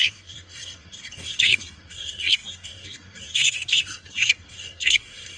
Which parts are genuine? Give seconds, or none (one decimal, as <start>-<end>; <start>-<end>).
none